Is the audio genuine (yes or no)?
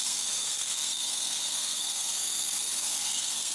no